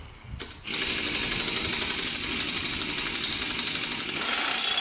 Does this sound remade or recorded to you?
recorded